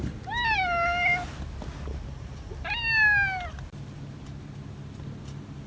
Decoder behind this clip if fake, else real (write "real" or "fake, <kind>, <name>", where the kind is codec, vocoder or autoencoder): real